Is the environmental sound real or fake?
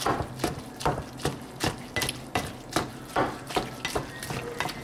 real